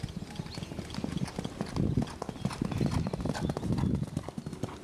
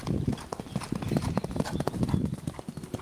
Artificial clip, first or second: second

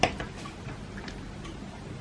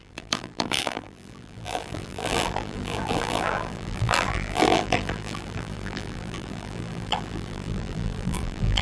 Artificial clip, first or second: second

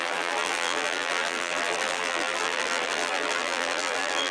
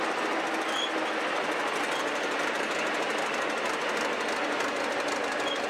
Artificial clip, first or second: first